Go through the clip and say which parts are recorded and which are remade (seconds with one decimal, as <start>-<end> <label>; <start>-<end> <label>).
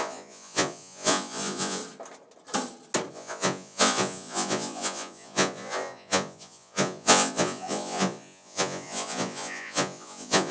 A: 0.0-1.8 remade; 1.8-3.1 recorded; 3.1-10.5 remade